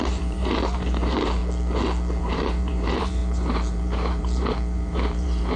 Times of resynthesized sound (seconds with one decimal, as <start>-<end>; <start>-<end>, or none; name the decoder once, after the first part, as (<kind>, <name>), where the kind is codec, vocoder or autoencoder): 0.0-1.4 (vocoder, BigVGAN v2); 2.2-5.6

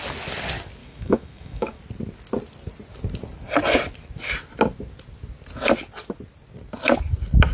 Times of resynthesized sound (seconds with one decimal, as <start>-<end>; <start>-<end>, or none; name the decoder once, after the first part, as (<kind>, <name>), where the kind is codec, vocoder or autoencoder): 0.8-1.8 (autoencoder, DAC-VAE)

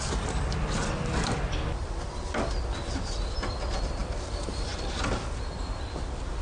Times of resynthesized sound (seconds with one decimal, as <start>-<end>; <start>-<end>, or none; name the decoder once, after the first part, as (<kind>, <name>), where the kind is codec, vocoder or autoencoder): none

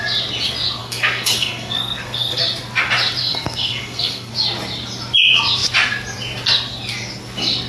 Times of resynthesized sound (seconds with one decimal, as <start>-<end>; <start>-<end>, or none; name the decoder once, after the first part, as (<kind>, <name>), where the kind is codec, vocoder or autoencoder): 0.8-2.4 (codec, SNAC); 3.2-4.3

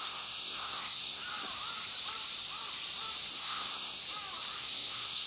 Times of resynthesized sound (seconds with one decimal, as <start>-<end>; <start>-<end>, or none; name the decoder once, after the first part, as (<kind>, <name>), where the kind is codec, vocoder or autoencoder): 0.0-1.2 (codec, SNAC); 3.3-4.0; 4.6-5.3

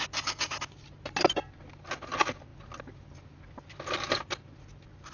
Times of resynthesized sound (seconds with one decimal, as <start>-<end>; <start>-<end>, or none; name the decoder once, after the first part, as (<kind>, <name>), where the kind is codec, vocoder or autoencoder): none